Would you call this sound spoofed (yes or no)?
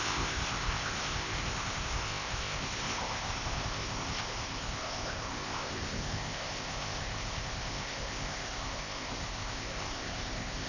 yes